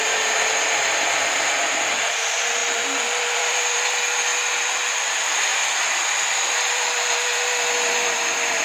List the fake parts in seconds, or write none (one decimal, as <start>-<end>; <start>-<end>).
0.0-5.5; 6.5-8.6